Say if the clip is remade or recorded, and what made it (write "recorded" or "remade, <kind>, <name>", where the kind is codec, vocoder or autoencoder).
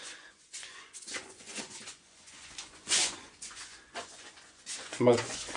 remade, vocoder, Vocos